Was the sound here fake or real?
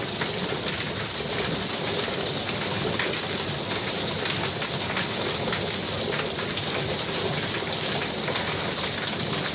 real